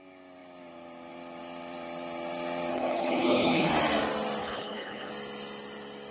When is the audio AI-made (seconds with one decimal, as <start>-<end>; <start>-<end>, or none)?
2.7-3.7; 4.4-5.1